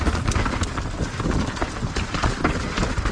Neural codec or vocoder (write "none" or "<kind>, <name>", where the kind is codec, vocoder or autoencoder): none